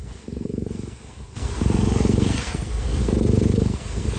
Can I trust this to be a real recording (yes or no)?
no